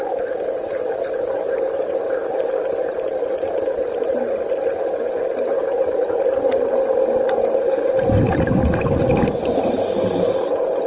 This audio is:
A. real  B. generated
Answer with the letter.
A